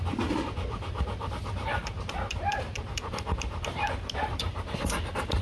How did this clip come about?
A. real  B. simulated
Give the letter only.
B